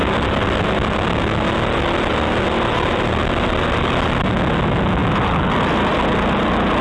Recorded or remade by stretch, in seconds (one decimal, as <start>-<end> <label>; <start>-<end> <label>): 0.0-6.8 recorded